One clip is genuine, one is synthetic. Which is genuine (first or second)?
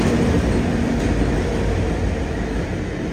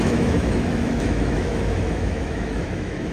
first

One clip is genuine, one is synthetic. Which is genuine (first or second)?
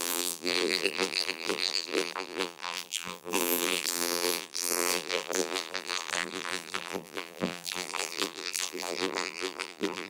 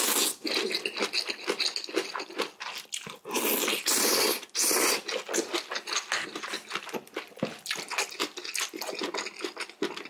second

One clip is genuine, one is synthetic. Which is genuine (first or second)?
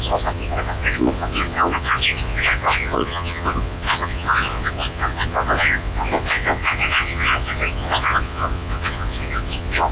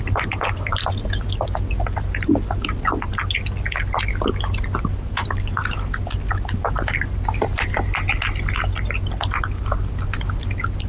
second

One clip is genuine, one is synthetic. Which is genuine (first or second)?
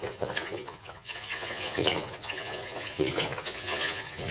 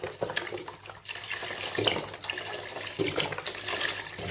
second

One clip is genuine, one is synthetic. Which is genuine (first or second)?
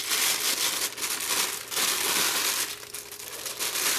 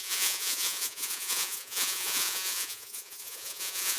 first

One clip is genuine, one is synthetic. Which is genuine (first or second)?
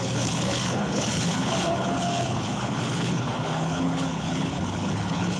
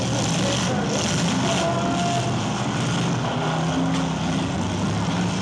second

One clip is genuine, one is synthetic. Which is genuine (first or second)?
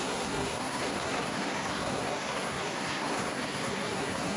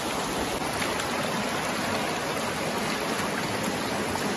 second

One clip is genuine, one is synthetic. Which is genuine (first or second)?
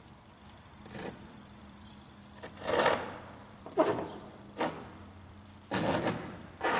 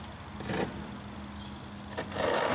second